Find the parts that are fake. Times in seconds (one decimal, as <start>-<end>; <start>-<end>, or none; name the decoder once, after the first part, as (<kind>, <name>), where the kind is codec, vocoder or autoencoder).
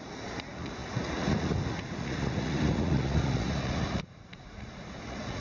0.0-5.4 (vocoder, Vocos)